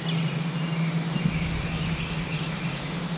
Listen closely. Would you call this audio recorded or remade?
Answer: recorded